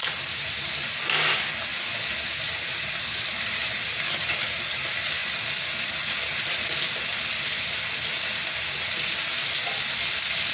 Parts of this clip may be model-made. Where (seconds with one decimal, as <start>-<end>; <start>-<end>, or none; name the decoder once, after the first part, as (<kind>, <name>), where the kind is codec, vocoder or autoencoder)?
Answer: none